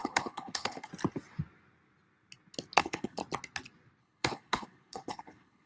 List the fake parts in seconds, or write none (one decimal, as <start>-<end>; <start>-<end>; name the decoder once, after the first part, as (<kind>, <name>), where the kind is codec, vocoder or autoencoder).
0.0-0.9 (codec, HILCodec); 2.8-3.2; 4.0-5.7